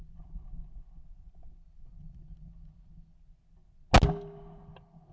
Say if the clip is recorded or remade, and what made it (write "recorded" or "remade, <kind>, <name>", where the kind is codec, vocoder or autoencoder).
recorded